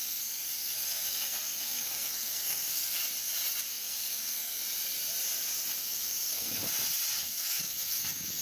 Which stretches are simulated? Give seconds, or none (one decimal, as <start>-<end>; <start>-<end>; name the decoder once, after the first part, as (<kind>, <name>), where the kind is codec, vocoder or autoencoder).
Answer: 0.0-3.0 (codec, SNAC); 3.7-4.6; 5.8-6.6; 7.2-8.4